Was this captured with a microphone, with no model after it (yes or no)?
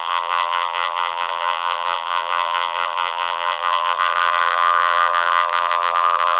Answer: no